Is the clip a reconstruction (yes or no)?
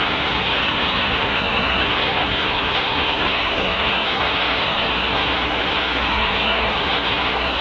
yes